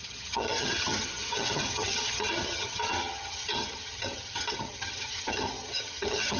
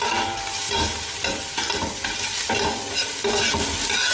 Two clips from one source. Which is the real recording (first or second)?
second